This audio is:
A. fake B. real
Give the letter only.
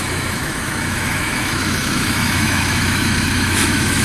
A